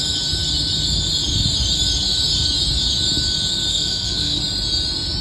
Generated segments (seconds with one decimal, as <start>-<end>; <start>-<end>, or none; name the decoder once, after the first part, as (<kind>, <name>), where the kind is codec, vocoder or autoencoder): 3.7-4.4 (codec, SNAC)